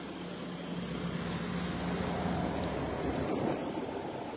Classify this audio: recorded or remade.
recorded